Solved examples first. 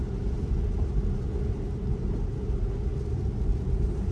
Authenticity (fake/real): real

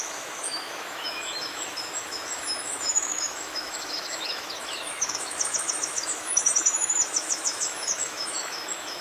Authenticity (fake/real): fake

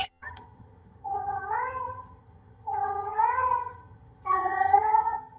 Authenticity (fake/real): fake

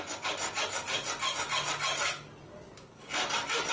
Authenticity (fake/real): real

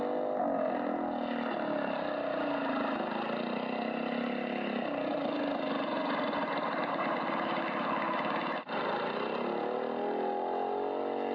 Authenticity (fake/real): real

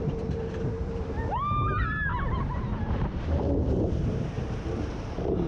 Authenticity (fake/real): fake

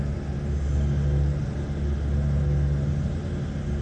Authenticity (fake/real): real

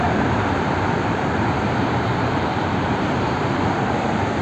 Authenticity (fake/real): fake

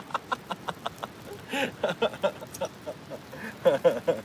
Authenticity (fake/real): real